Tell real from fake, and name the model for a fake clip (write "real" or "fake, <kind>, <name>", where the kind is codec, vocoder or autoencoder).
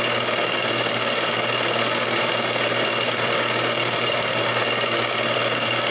fake, codec, DAC